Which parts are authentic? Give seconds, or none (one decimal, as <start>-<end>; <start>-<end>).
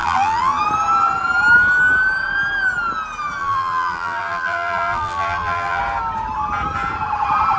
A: 0.6-3.4; 5.8-7.6